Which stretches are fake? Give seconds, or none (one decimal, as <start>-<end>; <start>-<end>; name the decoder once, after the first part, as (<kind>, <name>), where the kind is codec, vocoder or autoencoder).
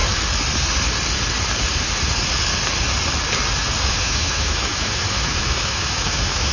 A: 3.9-6.5 (autoencoder, DAC-VAE)